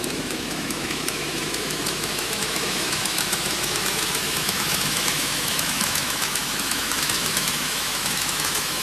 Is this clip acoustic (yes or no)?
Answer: no